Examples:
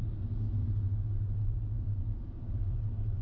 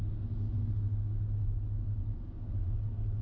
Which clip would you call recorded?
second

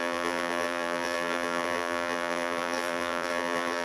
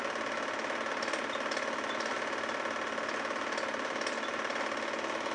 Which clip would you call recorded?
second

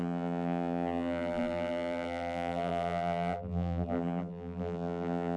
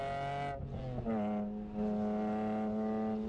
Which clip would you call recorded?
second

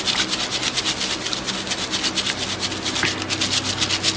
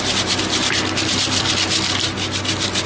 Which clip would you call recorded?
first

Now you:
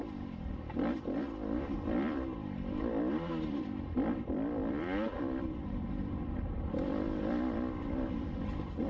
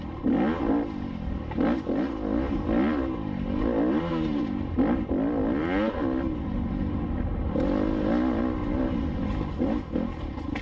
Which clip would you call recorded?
second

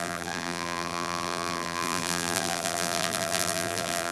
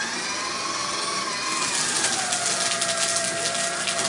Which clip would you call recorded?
second